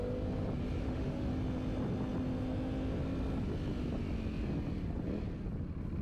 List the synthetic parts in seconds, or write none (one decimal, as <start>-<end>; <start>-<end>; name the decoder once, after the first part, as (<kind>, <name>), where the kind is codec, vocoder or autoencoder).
0.8-1.3 (autoencoder, DAC-VAE)